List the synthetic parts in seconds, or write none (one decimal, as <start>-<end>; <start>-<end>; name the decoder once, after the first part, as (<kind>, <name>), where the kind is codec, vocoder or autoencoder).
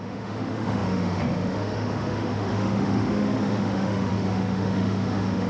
0.0-5.5 (autoencoder, DAC-VAE)